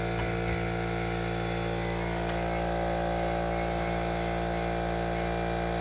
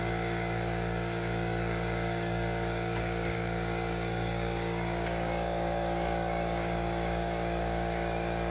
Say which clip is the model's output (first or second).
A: second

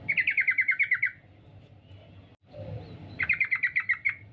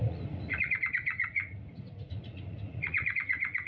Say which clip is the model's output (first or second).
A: second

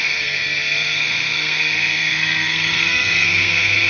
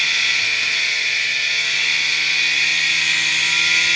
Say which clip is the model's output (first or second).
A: first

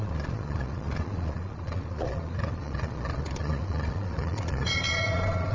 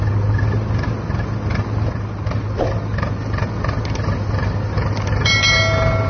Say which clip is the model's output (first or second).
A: first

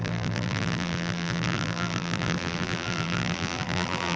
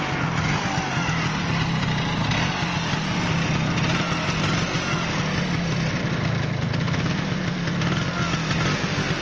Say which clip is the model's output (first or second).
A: first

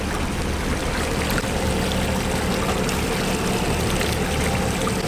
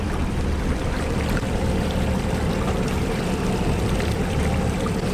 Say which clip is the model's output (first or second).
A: second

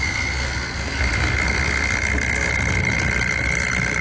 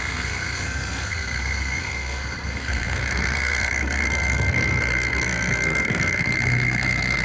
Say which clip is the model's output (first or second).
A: second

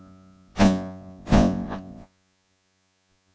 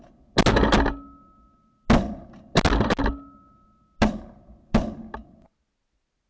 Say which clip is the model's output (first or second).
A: first